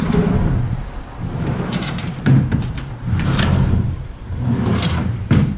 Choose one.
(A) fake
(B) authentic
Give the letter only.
A